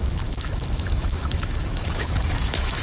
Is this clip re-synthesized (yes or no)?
yes